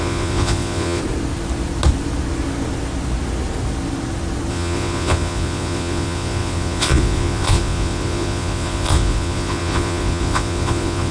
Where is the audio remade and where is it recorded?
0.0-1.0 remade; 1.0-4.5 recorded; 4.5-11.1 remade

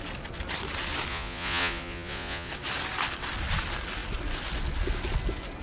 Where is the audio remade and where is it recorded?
0.0-1.1 recorded; 1.1-2.5 remade; 2.5-5.6 recorded